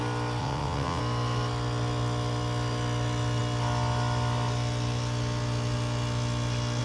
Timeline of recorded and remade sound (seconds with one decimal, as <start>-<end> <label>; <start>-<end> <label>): 0.0-0.4 recorded; 0.4-1.0 remade; 1.0-6.8 recorded